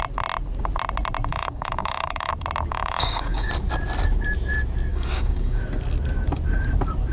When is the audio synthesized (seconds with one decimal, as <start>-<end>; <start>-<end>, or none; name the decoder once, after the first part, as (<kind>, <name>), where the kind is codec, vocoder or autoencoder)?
1.3-2.3 (codec, DAC); 2.7-3.5; 4.9-5.6